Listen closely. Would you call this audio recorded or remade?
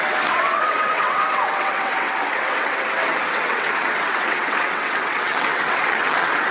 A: remade